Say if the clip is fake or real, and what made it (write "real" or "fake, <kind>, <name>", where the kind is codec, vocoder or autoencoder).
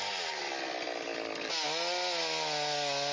real